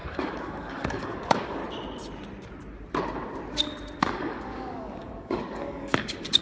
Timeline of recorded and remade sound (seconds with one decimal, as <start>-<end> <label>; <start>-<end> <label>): 0.0-1.6 remade; 1.6-4.0 recorded; 4.0-6.4 remade